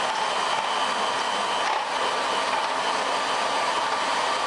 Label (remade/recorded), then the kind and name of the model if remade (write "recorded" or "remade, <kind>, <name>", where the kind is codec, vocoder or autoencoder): recorded